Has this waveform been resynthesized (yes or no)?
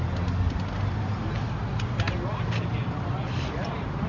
no